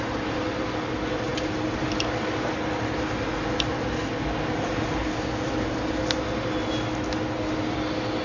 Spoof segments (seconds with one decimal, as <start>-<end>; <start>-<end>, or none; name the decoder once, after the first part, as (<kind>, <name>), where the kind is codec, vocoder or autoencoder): none